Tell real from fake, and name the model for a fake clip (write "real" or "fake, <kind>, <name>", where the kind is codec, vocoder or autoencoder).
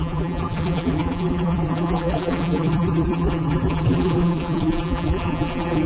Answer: fake, vocoder, BigVGAN v2